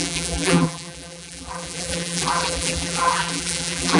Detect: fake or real fake